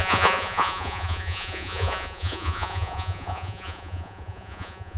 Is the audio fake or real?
fake